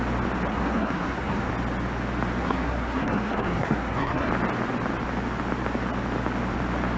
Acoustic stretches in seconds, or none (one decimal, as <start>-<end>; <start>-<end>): 0.0-0.5; 1.5-2.4; 4.3-7.0